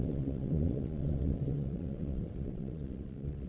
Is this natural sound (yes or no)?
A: no